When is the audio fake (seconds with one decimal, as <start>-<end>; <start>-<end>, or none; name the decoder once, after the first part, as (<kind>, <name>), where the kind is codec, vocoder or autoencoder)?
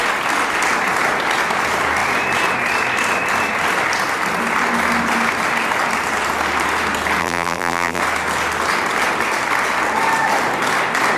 7.2-8.0 (vocoder, BigVGAN v2)